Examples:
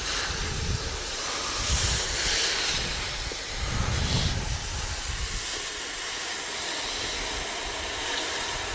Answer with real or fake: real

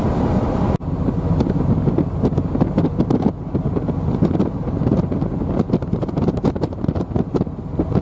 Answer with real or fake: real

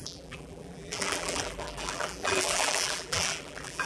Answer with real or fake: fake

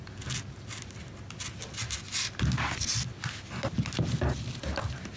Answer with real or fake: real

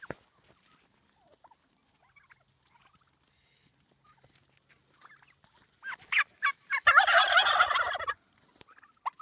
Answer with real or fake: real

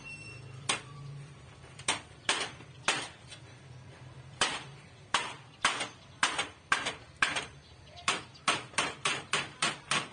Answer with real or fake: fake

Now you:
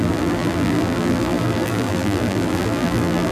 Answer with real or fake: fake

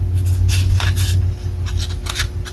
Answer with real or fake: real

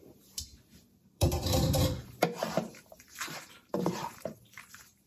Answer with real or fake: fake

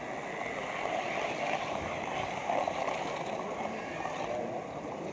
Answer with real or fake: real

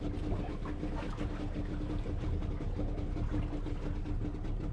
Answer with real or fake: real